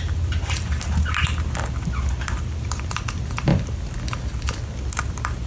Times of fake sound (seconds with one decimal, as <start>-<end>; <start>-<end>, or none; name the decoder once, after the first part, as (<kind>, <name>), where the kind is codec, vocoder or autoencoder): none

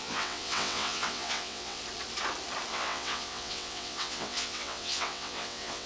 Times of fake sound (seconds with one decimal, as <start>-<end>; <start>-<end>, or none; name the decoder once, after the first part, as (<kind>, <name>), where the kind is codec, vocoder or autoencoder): 0.0-1.8 (vocoder, WaveNeXt); 2.7-5.9

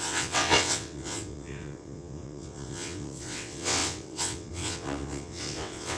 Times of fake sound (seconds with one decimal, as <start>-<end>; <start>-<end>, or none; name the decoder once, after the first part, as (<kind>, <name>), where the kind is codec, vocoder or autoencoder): 0.0-6.0 (vocoder, WaveNeXt)

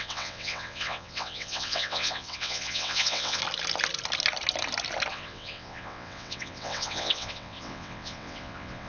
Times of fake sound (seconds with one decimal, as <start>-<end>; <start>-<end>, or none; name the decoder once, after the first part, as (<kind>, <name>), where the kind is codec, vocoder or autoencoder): 0.0-3.4 (vocoder, WaveNeXt); 5.1-8.9

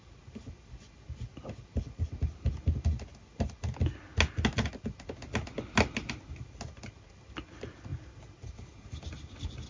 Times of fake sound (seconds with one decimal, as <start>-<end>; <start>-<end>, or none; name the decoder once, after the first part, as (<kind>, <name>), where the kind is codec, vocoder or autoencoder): none